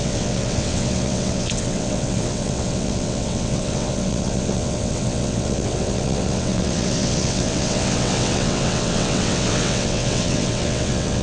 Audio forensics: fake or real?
fake